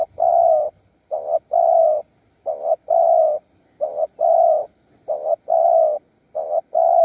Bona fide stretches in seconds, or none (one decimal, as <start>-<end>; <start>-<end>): 0.0-7.0